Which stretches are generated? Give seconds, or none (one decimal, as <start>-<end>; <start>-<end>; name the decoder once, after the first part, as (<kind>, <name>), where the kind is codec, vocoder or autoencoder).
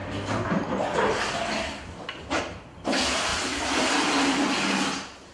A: none